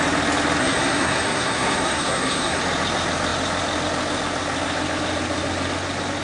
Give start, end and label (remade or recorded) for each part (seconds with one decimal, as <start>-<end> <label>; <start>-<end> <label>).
0.0-0.6 recorded; 0.6-2.6 remade; 2.6-6.2 recorded